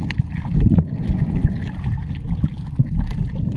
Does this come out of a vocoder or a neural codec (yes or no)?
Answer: no